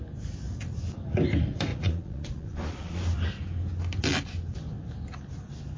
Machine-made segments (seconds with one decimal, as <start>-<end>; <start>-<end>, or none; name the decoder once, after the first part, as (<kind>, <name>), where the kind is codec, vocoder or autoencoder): 1.7-3.0 (vocoder, Vocos)